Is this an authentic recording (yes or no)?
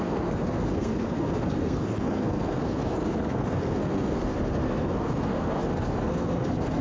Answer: no